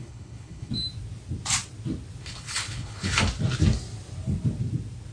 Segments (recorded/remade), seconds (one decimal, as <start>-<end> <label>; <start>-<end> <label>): 0.0-0.7 remade; 0.7-2.2 recorded; 2.2-3.2 remade; 3.2-5.1 recorded